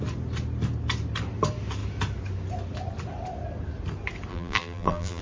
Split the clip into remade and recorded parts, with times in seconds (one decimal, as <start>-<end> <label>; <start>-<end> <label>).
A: 0.0-4.3 recorded; 4.3-5.2 remade